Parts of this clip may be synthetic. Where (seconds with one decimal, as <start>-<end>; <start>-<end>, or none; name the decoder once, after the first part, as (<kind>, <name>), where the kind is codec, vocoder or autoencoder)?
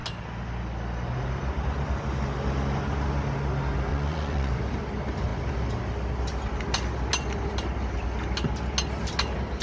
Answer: 3.9-4.5 (vocoder, Vocos)